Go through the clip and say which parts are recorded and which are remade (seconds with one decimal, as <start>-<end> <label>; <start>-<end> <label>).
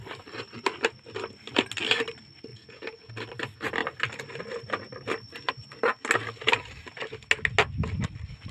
0.0-2.5 recorded; 2.5-3.1 remade; 3.1-8.5 recorded